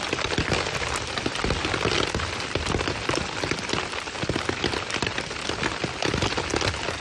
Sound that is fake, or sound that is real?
real